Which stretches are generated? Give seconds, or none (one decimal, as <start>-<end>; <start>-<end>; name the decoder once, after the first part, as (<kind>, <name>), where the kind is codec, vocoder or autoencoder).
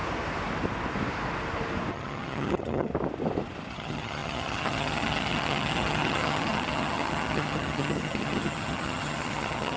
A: 1.9-2.9 (vocoder, HiFi-GAN); 3.7-9.8